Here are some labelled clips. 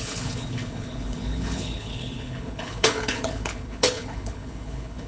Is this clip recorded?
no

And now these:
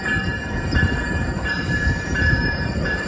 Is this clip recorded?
no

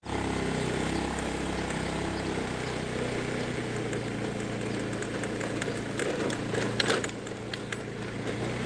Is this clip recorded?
yes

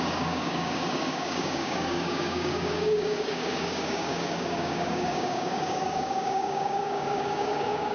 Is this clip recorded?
no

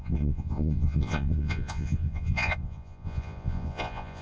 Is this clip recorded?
no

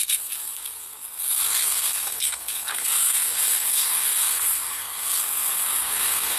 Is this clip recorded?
no